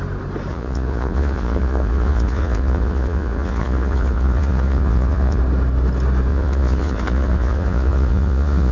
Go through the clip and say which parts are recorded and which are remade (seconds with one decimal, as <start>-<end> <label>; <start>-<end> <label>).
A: 0.0-0.5 recorded; 0.5-5.4 remade; 5.4-6.3 recorded; 6.3-8.7 remade

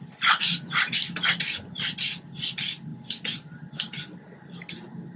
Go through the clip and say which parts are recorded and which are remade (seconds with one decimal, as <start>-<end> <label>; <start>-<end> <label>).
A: 0.0-5.2 recorded

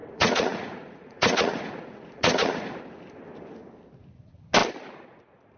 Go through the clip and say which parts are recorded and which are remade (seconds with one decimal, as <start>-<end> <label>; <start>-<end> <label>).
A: 0.0-2.8 remade; 2.8-5.6 recorded

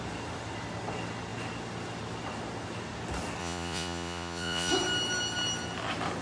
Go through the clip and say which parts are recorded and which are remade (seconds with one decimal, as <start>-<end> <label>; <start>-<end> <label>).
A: 0.0-3.4 recorded; 3.4-4.7 remade; 4.7-6.2 recorded

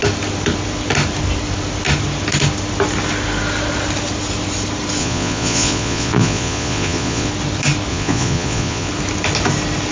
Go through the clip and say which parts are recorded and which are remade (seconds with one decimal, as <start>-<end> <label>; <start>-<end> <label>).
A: 0.0-5.0 recorded; 5.0-7.3 remade; 7.3-7.9 recorded; 7.9-8.9 remade; 8.9-9.9 recorded

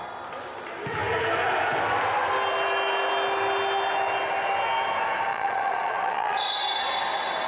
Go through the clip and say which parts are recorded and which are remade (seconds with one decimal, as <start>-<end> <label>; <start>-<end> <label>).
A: 0.0-5.3 recorded; 5.3-6.5 remade; 6.5-7.5 recorded

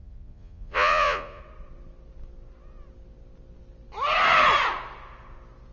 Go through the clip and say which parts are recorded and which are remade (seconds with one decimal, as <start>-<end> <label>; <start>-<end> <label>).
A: 0.0-1.4 remade; 1.4-5.7 recorded

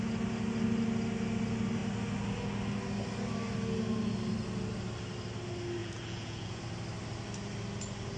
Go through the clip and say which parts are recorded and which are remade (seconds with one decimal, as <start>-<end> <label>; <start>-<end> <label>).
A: 0.0-5.8 recorded; 5.8-6.6 remade; 6.6-8.2 recorded